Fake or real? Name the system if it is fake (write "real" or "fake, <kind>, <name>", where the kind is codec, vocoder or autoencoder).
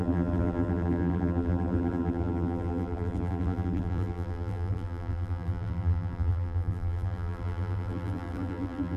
fake, vocoder, BigVGAN v2